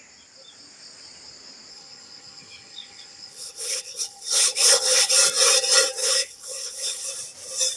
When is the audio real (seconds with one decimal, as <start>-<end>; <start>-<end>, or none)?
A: 0.0-1.7; 5.1-6.0; 7.1-7.8